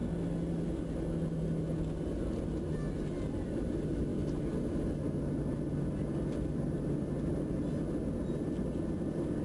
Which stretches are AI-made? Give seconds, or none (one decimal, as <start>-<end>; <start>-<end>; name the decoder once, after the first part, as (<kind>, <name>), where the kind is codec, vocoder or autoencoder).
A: none